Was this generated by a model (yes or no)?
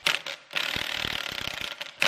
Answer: no